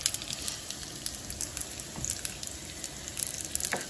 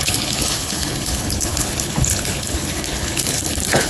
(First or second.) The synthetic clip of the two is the second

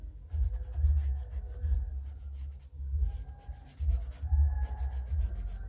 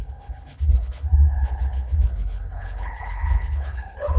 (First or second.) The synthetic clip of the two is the second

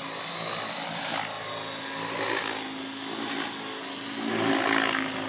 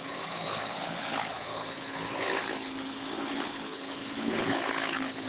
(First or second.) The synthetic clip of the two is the second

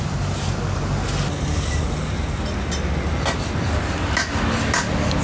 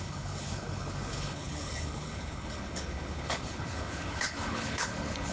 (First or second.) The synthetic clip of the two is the second